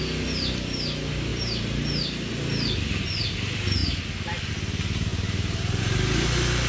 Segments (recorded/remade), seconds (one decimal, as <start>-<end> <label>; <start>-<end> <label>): 0.0-1.3 recorded; 1.3-2.3 remade; 2.3-5.1 recorded; 5.1-5.8 remade; 5.8-6.7 recorded